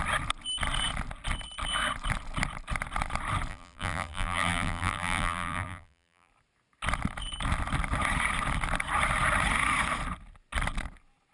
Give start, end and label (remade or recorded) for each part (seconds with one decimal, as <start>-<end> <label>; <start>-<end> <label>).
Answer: 0.0-3.5 recorded; 3.5-6.3 remade; 6.3-11.3 recorded